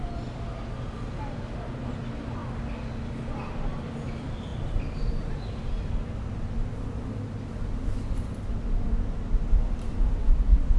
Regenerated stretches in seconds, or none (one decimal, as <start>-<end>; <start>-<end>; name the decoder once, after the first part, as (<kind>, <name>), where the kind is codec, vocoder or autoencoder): none